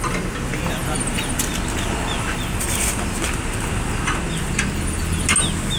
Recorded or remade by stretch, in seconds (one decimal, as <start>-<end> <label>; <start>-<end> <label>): 0.0-5.8 recorded